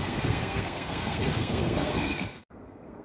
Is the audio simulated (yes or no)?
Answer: yes